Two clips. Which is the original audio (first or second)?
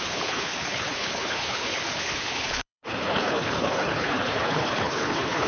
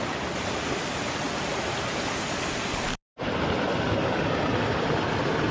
second